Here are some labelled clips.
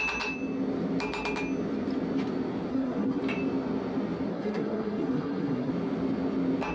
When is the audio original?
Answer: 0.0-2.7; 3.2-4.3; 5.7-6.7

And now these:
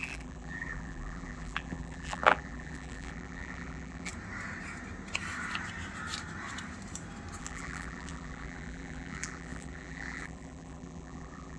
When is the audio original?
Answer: 4.1-7.4